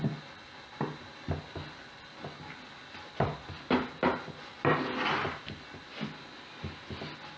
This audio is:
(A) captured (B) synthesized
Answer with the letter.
A